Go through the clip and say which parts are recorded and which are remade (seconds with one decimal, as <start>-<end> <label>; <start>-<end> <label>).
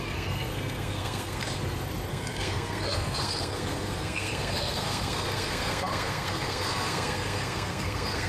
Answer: 0.0-1.6 remade; 1.6-2.1 recorded; 2.1-8.3 remade